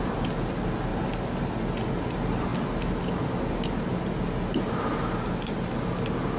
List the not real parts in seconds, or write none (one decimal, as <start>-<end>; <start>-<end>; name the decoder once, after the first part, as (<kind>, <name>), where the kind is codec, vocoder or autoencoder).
none